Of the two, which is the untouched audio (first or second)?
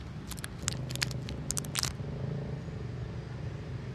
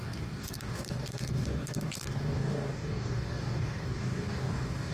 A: first